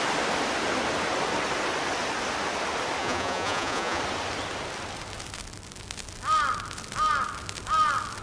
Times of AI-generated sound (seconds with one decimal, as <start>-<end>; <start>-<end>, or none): 3.0-4.0